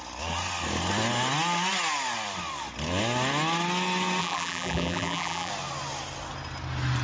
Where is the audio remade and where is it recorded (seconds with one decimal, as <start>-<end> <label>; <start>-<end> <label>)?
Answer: 0.0-4.2 recorded; 4.2-5.5 remade; 5.5-7.0 recorded